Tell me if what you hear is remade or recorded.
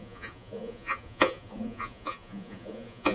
remade